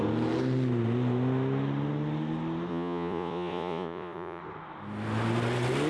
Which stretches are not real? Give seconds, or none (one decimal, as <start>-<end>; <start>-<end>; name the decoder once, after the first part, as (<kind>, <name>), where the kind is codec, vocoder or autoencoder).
2.7-4.4 (vocoder, Vocos)